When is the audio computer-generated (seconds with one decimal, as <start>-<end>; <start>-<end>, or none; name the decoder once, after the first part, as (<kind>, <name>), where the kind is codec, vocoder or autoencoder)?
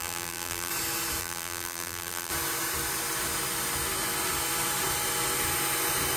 0.0-0.7 (vocoder, BigVGAN v2); 1.2-2.3